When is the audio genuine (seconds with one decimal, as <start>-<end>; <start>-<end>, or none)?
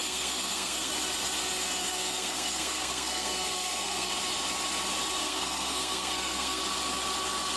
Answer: 0.9-1.9; 4.1-5.2; 6.6-7.6